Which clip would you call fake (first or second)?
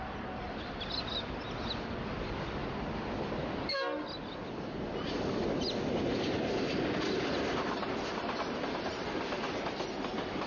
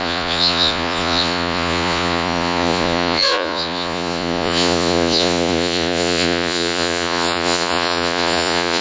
second